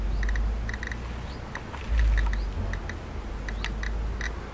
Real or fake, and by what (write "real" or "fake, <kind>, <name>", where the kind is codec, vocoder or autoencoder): real